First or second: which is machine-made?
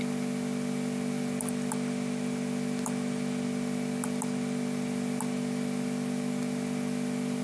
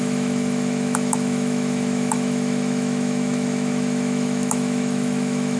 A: second